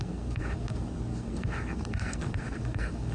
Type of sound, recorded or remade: remade